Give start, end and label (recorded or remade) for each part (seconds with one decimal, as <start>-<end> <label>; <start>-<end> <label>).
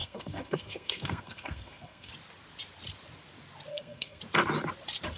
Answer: 0.0-2.1 remade; 2.1-3.7 recorded; 3.7-4.2 remade; 4.2-5.2 recorded